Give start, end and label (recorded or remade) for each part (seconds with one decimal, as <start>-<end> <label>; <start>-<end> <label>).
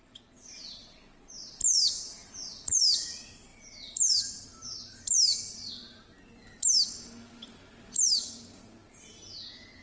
0.0-9.8 recorded